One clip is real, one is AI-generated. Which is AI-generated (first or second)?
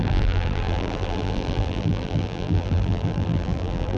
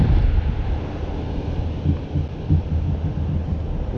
first